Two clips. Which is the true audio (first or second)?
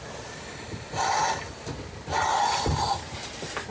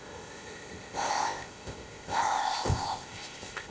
first